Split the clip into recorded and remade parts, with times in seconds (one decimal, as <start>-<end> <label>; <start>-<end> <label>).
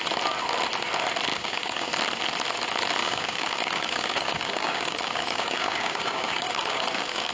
0.0-1.3 recorded; 1.3-1.9 remade; 1.9-3.0 recorded; 3.0-7.3 remade